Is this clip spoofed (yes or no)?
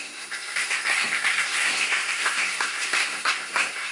yes